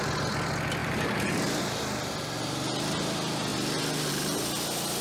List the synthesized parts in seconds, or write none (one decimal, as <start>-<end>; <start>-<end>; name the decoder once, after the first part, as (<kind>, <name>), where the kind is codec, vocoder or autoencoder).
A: 0.8-1.6 (vocoder, BigVGAN v2)